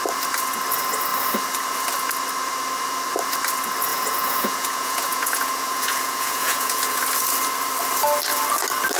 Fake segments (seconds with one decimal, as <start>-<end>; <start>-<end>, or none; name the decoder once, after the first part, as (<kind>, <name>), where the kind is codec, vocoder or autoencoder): 3.9-7.0 (vocoder, Vocos)